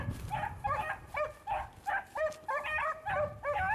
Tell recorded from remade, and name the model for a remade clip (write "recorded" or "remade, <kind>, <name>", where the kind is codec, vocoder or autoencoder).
recorded